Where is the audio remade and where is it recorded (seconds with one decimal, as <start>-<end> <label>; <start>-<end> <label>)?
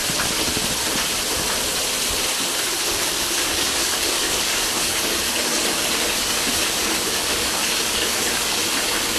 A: 0.0-2.9 recorded; 2.9-9.2 remade